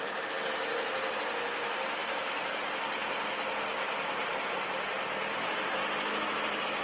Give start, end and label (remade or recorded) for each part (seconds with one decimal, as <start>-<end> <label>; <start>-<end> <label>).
0.0-6.8 recorded